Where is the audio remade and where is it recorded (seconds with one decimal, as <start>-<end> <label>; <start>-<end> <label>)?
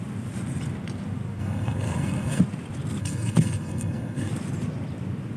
0.0-1.4 recorded; 1.4-2.4 remade; 2.4-3.0 recorded; 3.0-4.3 remade; 4.3-5.4 recorded